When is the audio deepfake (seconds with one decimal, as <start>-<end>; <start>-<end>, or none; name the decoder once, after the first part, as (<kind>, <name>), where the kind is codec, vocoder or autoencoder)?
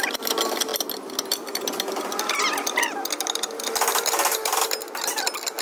0.0-0.7 (vocoder, BigVGAN v2); 3.2-5.6